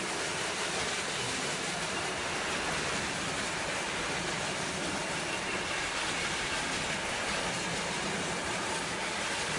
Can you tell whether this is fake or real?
real